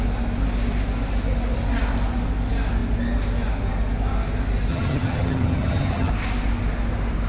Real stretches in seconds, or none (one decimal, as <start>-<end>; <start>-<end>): 0.0-4.7; 6.1-7.3